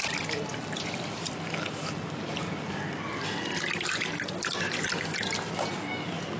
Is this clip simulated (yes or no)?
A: no